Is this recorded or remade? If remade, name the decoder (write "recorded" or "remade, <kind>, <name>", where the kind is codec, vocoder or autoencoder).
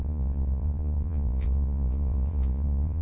remade, vocoder, Vocos